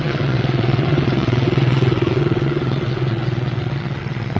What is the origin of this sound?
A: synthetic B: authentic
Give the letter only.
A